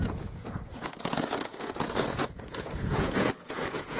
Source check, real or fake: fake